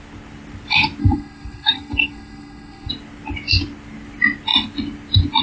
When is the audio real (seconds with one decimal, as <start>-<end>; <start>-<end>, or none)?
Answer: 0.0-1.0; 2.9-5.4